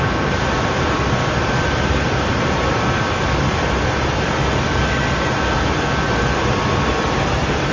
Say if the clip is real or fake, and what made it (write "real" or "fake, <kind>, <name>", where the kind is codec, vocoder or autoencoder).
real